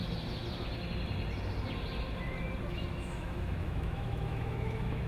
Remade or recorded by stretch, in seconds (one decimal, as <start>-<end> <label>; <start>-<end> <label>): 0.0-2.7 recorded; 2.7-5.1 remade